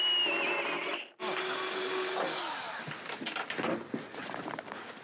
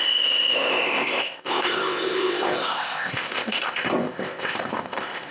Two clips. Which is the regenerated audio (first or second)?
second